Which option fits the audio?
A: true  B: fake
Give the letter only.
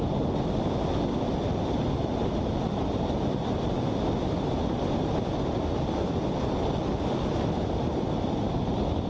A